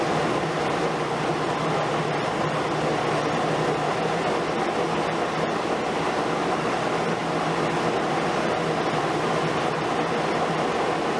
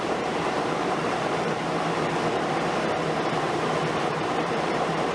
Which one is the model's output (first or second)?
second